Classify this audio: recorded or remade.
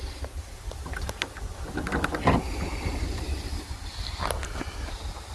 recorded